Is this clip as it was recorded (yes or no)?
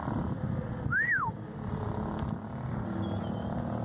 yes